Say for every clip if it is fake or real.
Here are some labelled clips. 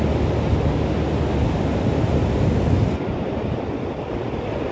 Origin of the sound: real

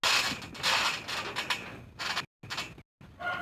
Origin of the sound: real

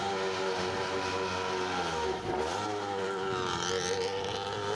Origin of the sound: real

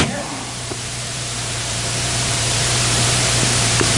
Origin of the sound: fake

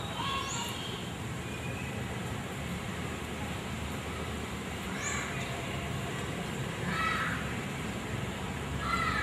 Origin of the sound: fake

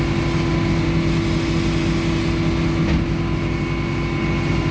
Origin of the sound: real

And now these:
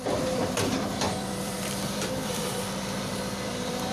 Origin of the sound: fake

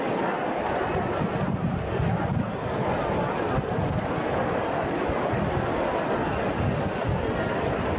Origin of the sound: real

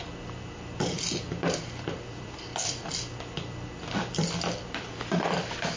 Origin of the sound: fake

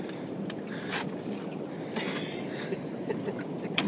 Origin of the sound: fake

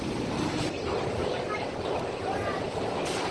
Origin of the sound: fake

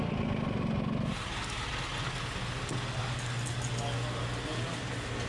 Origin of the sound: real